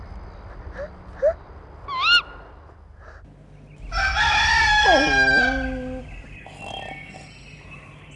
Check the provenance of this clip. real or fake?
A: real